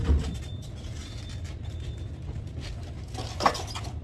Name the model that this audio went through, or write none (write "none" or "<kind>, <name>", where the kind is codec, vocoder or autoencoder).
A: none